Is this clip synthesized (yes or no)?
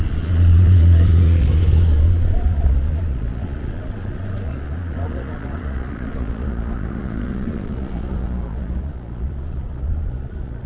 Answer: yes